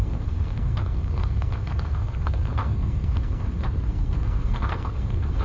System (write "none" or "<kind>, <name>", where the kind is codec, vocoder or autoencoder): codec, SNAC